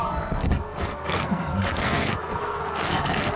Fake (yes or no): yes